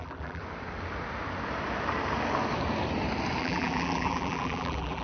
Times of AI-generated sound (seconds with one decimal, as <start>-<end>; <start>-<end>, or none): 0.0-0.4; 3.4-5.0